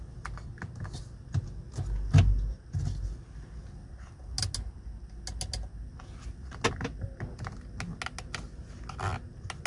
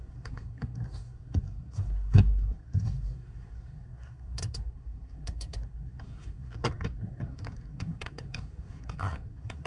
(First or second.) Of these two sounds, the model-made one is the second